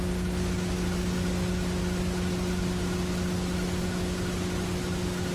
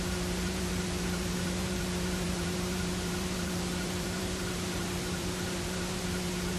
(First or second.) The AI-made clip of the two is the second